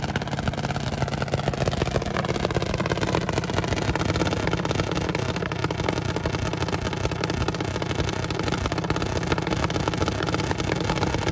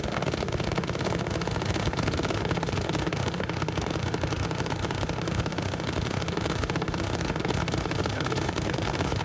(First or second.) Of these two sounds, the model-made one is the second